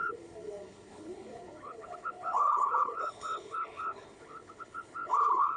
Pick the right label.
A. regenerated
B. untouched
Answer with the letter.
A